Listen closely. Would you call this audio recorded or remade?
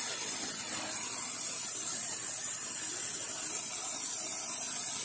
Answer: recorded